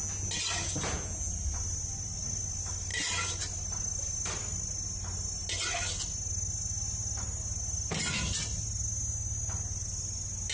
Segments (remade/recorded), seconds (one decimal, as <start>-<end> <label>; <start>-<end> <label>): 0.0-10.5 recorded